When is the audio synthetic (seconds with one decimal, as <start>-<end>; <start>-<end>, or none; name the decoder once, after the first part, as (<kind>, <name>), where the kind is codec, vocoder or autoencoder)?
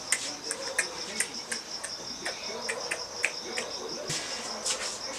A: none